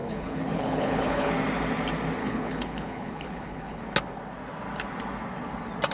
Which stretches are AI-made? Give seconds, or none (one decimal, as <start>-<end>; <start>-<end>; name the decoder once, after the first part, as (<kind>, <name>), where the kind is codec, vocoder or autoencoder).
0.0-1.3 (codec, HILCodec); 2.2-3.8